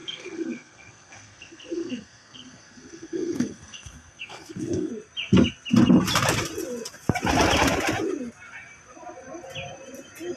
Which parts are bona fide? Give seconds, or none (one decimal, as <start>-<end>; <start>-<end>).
4.9-10.4